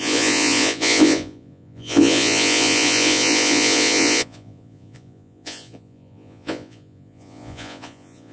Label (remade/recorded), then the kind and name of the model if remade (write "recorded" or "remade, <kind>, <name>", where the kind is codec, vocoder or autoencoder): remade, vocoder, Vocos